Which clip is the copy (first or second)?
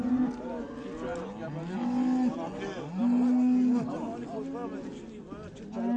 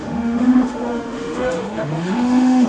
second